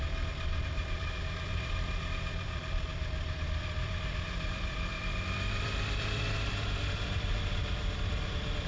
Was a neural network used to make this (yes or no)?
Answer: yes